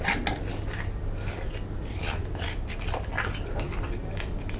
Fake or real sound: real